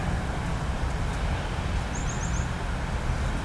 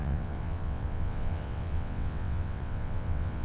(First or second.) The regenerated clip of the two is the second